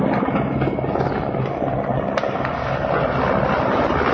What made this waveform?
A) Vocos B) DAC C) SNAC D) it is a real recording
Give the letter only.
D